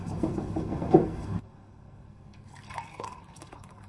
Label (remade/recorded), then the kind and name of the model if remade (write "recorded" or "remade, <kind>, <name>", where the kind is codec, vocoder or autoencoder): remade, codec, SNAC